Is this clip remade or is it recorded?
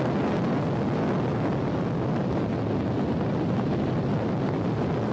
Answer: recorded